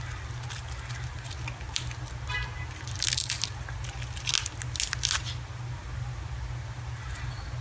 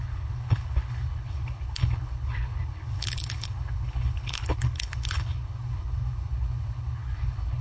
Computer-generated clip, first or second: second